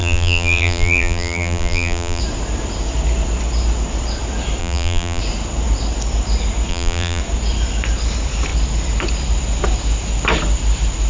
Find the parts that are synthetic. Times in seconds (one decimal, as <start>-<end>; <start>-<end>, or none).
0.0-2.2; 4.6-5.2; 6.7-7.2